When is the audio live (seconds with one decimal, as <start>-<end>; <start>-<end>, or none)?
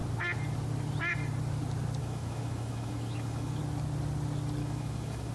0.0-2.0; 3.6-4.6